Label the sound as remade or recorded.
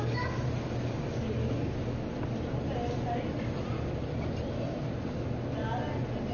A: recorded